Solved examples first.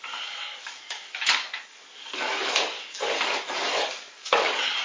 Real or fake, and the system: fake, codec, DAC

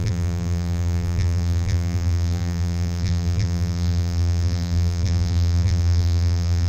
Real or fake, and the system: fake, vocoder, BigVGAN v2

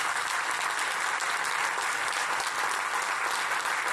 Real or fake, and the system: real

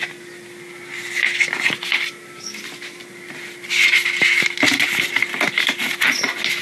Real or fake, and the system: real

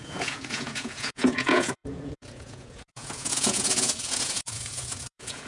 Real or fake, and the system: fake, vocoder, Vocos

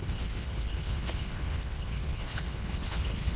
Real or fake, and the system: fake, codec, HILCodec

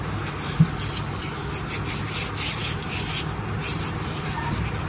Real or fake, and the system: real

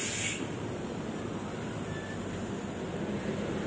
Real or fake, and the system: real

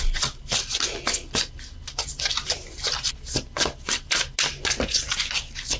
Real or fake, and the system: real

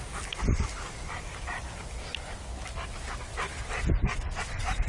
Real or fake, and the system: real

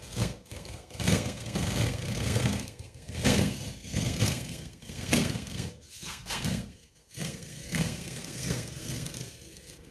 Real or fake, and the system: fake, codec, SNAC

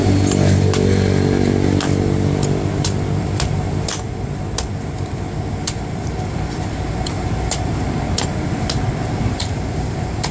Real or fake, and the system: real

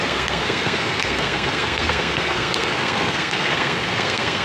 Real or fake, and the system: fake, codec, SNAC